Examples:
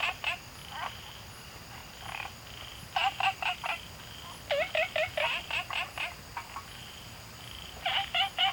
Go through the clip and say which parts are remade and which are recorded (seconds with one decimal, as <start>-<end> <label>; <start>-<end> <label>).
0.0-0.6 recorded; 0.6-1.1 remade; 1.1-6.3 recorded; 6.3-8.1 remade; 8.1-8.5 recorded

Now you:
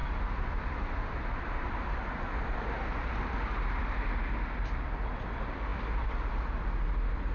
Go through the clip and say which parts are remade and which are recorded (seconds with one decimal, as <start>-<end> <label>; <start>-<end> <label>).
0.0-4.1 remade; 4.1-7.3 recorded

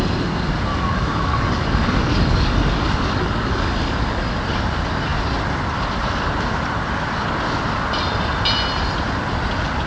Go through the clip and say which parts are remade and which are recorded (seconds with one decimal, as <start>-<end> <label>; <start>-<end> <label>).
0.0-0.7 recorded; 0.7-4.4 remade; 4.4-9.9 recorded

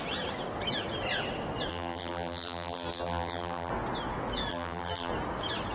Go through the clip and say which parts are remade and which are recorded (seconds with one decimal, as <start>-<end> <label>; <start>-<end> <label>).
0.0-1.7 recorded; 1.7-3.7 remade; 3.7-4.5 recorded; 4.5-5.1 remade; 5.1-5.7 recorded

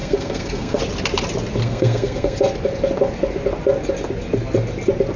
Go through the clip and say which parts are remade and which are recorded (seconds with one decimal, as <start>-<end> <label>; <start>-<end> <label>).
0.0-0.8 remade; 0.8-1.6 recorded; 1.6-2.4 remade; 2.4-5.2 recorded

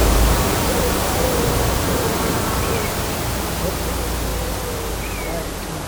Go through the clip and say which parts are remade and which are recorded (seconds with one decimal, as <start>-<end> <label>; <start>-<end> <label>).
0.0-2.9 remade; 2.9-5.9 recorded

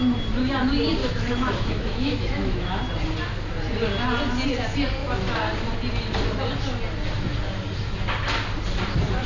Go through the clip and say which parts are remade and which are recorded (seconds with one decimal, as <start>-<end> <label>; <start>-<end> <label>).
0.0-1.0 recorded; 1.0-2.8 remade; 2.8-9.3 recorded

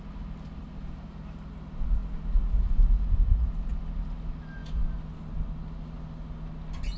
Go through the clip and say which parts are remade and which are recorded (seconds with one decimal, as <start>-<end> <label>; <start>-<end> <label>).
0.0-7.0 recorded